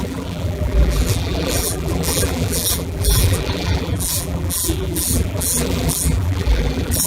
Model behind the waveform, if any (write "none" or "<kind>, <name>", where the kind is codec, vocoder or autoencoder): vocoder, BigVGAN v2